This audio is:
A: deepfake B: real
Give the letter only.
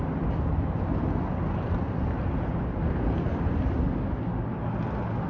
B